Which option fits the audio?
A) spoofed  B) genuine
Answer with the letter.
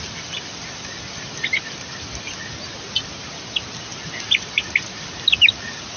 B